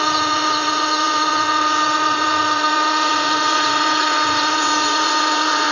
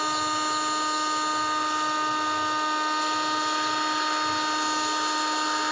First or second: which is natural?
second